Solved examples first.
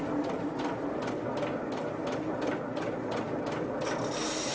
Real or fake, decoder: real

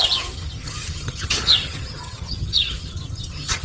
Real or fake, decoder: fake, vocoder, HiFi-GAN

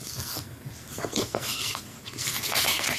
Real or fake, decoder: fake, codec, SNAC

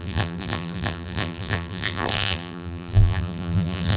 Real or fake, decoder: fake, vocoder, BigVGAN v2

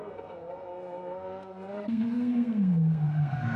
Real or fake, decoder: fake, codec, SNAC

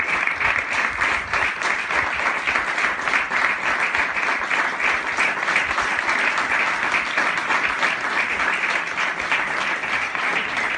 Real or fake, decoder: real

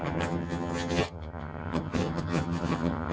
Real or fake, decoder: fake, vocoder, HiFi-GAN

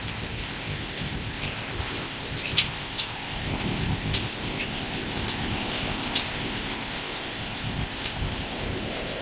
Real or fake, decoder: fake, codec, ZipCodec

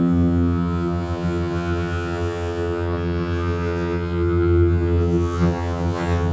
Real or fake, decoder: fake, vocoder, HiFi-GAN